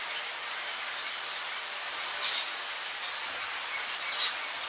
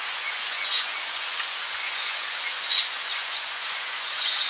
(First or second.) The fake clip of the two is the second